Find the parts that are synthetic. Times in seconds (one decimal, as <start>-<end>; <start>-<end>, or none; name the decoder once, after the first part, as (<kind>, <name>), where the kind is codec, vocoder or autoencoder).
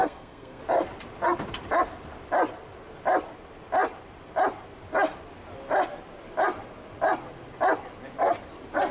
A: 0.0-0.6 (codec, SNAC)